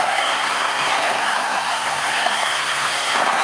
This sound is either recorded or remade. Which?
remade